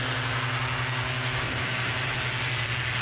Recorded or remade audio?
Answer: recorded